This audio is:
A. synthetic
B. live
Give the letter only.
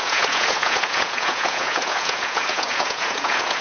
A